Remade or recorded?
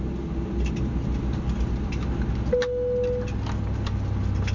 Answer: recorded